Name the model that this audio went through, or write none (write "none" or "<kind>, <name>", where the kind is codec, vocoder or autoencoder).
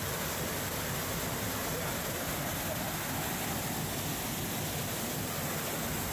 none